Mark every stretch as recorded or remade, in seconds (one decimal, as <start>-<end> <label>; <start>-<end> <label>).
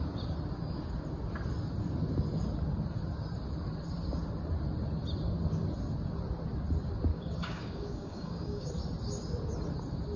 0.0-7.1 recorded; 7.1-8.7 remade; 8.7-10.2 recorded